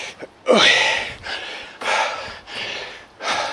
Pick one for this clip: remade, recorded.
remade